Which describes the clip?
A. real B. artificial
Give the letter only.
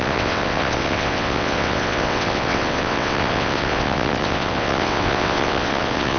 B